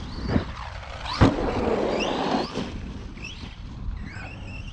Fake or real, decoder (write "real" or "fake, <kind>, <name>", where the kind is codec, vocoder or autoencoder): real